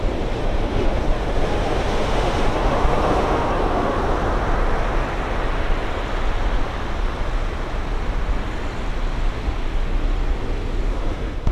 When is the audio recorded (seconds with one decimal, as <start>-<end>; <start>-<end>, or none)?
0.0-0.4; 4.1-10.9